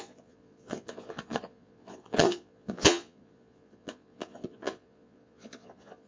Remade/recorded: remade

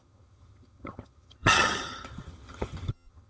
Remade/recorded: remade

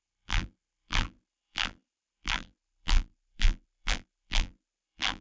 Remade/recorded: remade